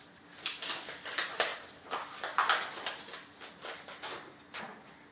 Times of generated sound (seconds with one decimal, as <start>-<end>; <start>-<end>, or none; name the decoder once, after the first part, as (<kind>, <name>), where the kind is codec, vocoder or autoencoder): none

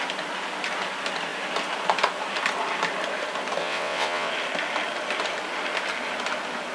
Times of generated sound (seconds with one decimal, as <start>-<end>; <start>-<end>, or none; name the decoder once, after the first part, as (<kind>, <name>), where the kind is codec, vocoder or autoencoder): 3.6-4.3 (vocoder, WaveNeXt)

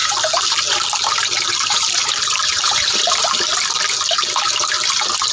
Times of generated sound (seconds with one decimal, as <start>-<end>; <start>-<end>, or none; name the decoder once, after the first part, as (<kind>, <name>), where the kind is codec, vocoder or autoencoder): 0.0-3.2 (vocoder, BigVGAN v2)